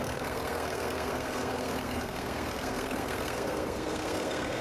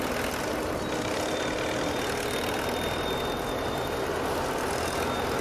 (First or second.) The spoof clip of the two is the first